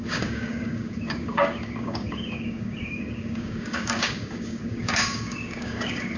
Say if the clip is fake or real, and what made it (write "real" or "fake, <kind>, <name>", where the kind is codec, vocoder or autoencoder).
fake, codec, DAC